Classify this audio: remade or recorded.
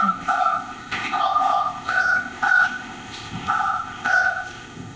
remade